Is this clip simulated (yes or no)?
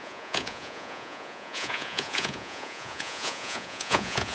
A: yes